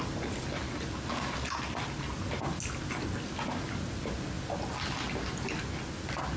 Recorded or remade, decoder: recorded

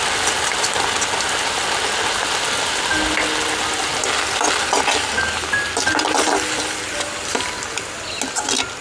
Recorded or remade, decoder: recorded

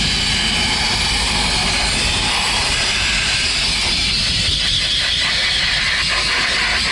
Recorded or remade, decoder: recorded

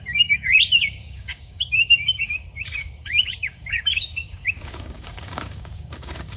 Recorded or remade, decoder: remade, codec, DAC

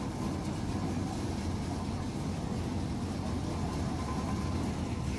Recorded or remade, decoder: recorded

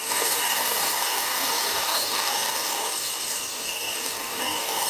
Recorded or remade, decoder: remade, codec, DAC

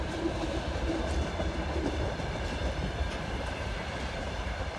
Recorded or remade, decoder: remade, vocoder, BigVGAN v2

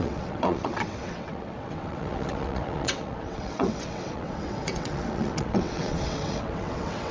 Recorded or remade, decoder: remade, vocoder, WaveNeXt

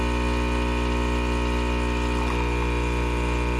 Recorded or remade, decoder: recorded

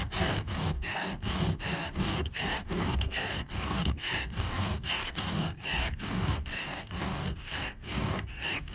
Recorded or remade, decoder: remade, codec, DAC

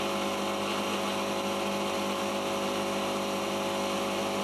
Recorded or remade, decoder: recorded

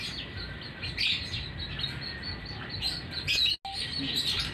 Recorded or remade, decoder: recorded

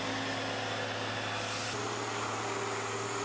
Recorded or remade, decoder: recorded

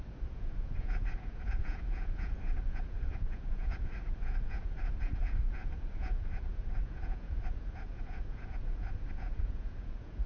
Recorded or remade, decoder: remade, vocoder, Vocos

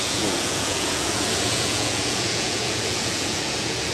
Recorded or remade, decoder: remade, vocoder, Vocos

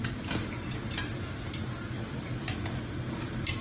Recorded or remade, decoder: recorded